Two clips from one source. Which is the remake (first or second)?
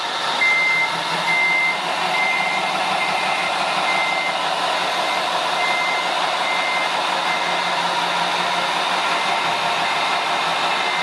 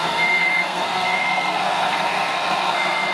second